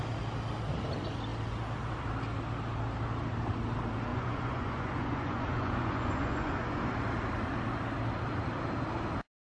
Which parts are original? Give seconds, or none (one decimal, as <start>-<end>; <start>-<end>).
0.0-4.1; 6.9-9.4